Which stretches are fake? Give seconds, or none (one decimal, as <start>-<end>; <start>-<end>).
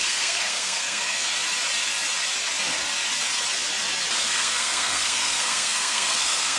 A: 0.0-1.3; 4.2-6.6